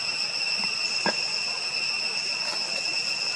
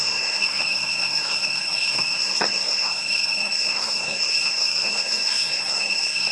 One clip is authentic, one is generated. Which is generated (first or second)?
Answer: second